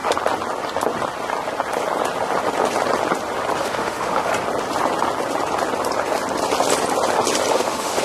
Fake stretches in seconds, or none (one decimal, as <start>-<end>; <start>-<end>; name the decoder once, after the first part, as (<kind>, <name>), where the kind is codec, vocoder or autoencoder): 3.6-4.3 (autoencoder, DAC-VAE); 7.5-8.0